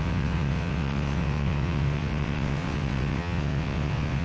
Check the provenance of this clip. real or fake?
fake